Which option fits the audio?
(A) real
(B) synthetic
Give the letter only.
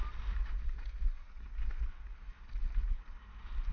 A